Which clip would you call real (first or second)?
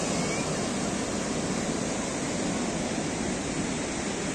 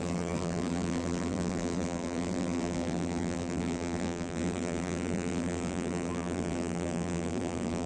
first